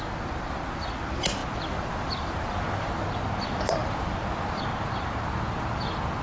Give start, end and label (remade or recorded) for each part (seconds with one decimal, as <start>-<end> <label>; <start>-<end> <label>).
0.0-6.2 recorded